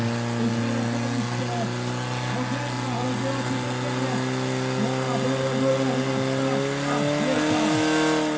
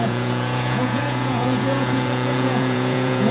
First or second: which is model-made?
second